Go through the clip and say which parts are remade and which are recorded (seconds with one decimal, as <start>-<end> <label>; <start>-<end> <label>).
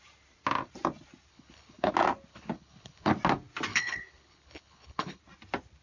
0.0-1.3 recorded; 1.3-1.9 remade; 1.9-2.3 recorded; 2.3-3.1 remade; 3.1-3.7 recorded; 3.7-5.2 remade; 5.2-5.8 recorded